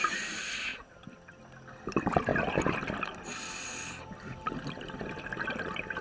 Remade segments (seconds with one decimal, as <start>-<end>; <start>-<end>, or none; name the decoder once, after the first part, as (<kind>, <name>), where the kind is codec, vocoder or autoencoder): 0.7-1.4 (vocoder, BigVGAN v2)